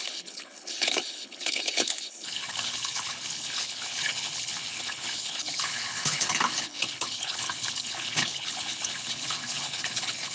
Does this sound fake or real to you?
fake